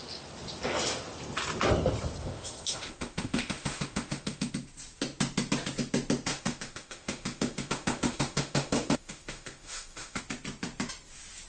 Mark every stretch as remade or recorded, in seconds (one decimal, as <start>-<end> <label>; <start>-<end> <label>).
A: 0.0-2.2 recorded; 2.2-4.5 remade; 4.5-6.3 recorded; 6.3-10.2 remade; 10.2-11.5 recorded